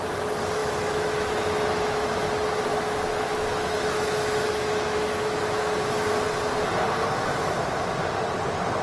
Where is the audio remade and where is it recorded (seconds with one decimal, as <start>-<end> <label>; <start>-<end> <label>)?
0.0-0.6 recorded; 0.6-2.3 remade; 2.3-2.7 recorded; 2.7-5.4 remade; 5.4-8.8 recorded